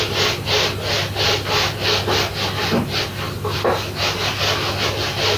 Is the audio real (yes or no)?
yes